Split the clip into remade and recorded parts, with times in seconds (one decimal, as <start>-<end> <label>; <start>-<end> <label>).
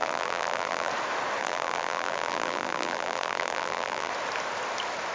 0.0-0.9 remade; 0.9-1.4 recorded; 1.4-4.1 remade; 4.1-5.1 recorded